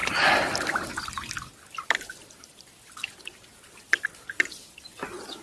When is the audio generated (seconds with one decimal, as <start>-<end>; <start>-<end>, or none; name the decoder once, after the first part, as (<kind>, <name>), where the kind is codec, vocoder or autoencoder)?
none